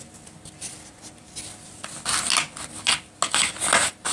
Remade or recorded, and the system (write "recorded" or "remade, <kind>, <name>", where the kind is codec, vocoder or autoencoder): recorded